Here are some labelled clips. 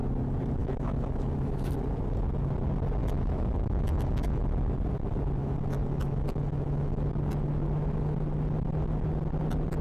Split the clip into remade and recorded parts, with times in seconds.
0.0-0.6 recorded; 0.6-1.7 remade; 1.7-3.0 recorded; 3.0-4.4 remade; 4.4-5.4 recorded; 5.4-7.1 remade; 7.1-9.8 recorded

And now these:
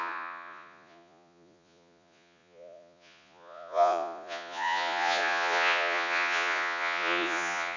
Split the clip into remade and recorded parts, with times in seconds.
0.0-7.8 remade

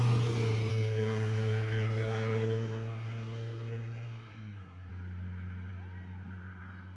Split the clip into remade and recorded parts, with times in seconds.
0.0-0.7 recorded; 0.7-4.9 remade; 4.9-7.0 recorded

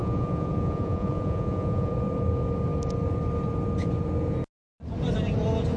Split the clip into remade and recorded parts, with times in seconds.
0.0-1.9 remade; 1.9-5.8 recorded

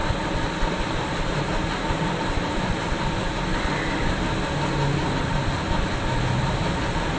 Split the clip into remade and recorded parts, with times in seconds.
0.0-4.1 remade; 4.1-5.2 recorded; 5.2-6.2 remade; 6.2-7.2 recorded

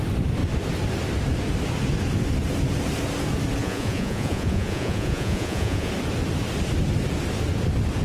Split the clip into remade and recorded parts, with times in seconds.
0.0-3.6 recorded; 3.6-5.9 remade; 5.9-8.0 recorded

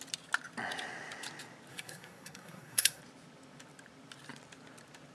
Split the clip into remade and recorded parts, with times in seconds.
0.0-1.7 recorded; 1.7-3.0 remade; 3.0-5.1 recorded

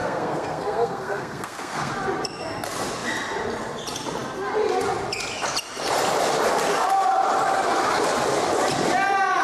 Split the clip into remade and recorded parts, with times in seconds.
0.0-1.9 remade; 1.9-9.4 recorded